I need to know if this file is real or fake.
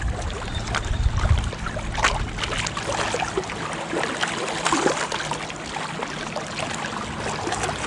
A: real